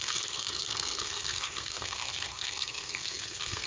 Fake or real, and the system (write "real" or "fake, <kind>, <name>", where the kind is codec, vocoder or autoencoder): fake, codec, SNAC